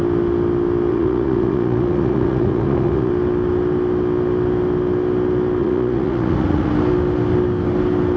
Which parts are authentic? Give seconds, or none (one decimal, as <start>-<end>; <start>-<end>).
0.0-0.9; 3.1-5.6; 6.7-8.2